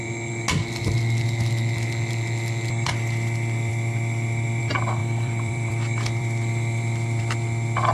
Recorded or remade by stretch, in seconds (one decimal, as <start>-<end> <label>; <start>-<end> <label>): 0.0-3.7 recorded; 3.7-4.6 remade; 4.6-5.0 recorded; 5.0-7.2 remade; 7.2-7.9 recorded